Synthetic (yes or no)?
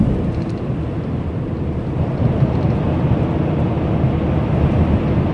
no